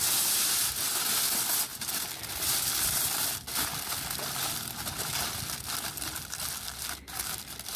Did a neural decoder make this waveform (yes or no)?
no